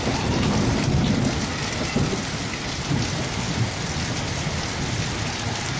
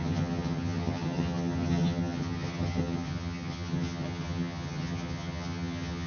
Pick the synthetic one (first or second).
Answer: second